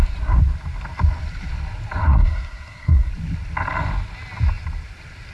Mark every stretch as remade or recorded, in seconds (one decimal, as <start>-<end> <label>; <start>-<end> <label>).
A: 0.0-2.0 recorded; 2.0-3.1 remade; 3.1-5.3 recorded